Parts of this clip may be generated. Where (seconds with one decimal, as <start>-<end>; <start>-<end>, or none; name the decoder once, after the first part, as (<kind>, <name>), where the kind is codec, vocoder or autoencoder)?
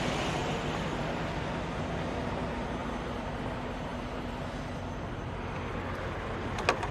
none